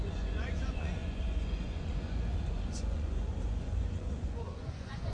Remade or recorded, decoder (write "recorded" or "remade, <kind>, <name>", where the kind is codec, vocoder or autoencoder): remade, vocoder, Vocos